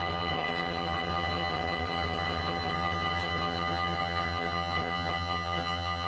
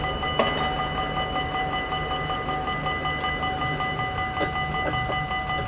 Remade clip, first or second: first